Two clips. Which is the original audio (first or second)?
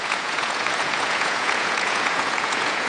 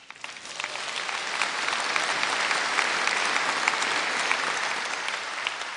second